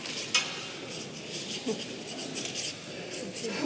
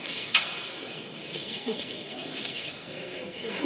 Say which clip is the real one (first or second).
first